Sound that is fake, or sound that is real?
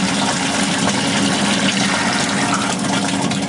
real